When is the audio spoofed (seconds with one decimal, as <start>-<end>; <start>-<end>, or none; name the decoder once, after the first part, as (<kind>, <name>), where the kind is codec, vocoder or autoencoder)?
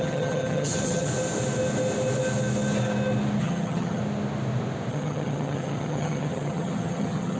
0.0-1.1 (vocoder, HiFi-GAN); 3.4-4.0; 4.9-7.4